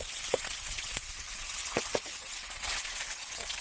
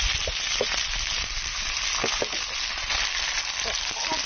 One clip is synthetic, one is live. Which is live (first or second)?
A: second